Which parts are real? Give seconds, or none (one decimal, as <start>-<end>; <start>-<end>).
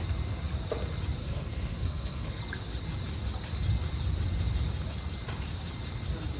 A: 0.0-1.2; 2.4-6.4